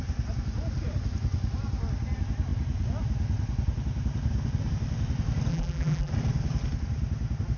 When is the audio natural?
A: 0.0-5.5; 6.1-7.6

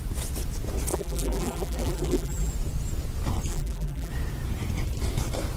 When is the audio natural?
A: 0.0-0.9; 2.5-3.5; 4.1-5.6

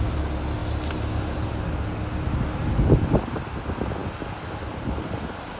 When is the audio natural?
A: 0.0-5.6

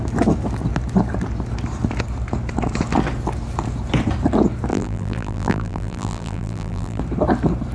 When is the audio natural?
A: 0.0-4.7; 7.0-7.7

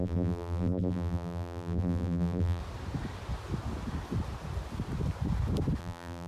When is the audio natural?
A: 2.6-5.8

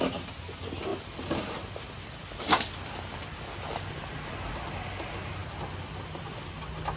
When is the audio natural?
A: 0.0-7.0

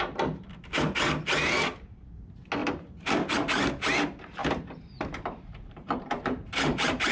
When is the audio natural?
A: 0.0-2.6; 3.6-4.4

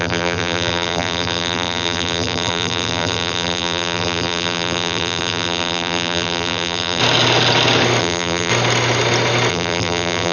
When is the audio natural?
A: 7.0-8.0; 8.5-9.5